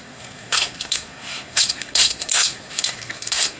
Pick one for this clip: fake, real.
fake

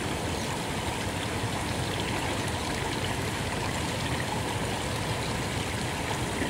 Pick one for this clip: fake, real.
real